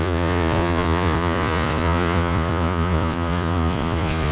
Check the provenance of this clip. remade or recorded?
remade